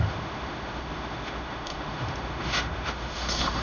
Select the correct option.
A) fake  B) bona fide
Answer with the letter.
A